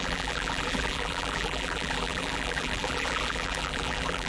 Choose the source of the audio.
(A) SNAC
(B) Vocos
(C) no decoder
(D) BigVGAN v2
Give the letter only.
D